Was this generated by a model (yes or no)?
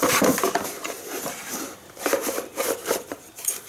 yes